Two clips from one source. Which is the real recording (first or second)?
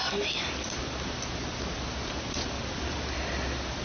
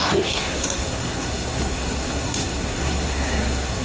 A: first